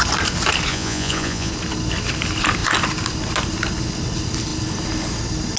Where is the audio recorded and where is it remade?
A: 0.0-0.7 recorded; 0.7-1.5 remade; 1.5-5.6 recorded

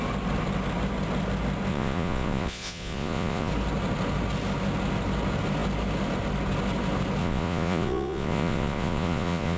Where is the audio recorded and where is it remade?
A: 0.0-1.7 recorded; 1.7-3.5 remade; 3.5-7.2 recorded; 7.2-9.6 remade